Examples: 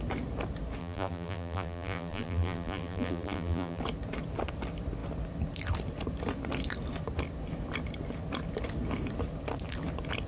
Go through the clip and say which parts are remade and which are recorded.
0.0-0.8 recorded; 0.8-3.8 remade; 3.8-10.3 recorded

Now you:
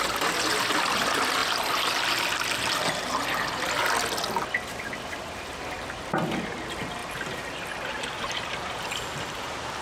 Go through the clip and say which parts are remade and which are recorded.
0.0-7.0 recorded; 7.0-9.8 remade

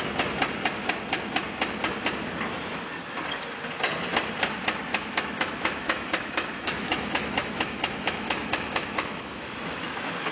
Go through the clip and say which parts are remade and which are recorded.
0.0-4.9 recorded; 4.9-10.3 remade